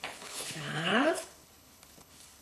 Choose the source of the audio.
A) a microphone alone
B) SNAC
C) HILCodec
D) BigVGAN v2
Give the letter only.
C